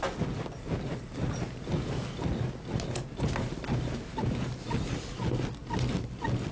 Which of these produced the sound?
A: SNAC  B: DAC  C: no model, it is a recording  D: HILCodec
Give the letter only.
C